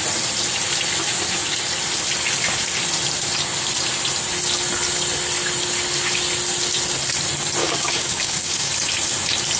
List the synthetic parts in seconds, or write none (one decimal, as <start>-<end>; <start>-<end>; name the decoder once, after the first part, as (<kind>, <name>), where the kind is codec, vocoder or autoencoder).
7.6-8.7 (codec, DAC)